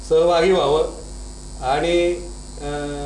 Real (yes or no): yes